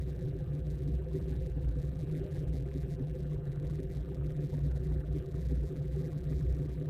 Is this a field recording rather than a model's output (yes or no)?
no